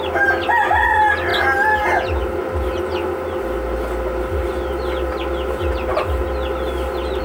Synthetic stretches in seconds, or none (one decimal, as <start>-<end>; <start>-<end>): none